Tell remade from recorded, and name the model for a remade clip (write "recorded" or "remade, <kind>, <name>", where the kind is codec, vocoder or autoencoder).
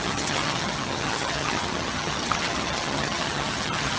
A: remade, vocoder, HiFi-GAN